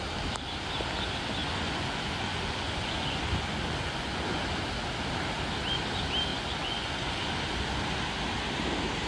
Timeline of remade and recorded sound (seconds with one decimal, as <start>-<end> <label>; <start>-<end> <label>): 0.0-1.4 recorded; 1.4-4.4 remade; 4.4-6.3 recorded; 6.3-7.8 remade; 7.8-9.1 recorded